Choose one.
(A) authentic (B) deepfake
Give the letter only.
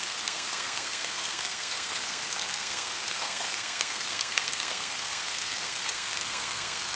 B